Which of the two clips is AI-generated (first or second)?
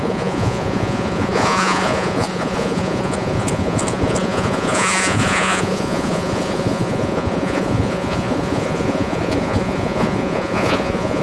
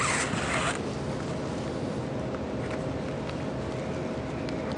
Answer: first